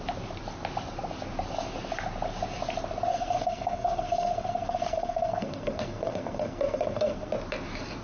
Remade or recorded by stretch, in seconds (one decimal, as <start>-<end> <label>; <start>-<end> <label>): 0.0-3.1 recorded; 3.1-7.3 remade; 7.3-8.0 recorded